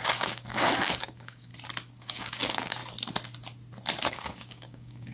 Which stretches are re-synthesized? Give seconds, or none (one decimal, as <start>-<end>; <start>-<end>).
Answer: 0.0-1.5; 2.0-2.8; 4.1-5.1